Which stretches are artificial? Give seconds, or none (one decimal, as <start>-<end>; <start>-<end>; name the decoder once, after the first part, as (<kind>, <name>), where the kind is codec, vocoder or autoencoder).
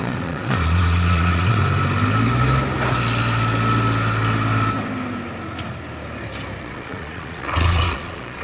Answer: 0.0-1.6 (vocoder, Vocos); 6.6-8.4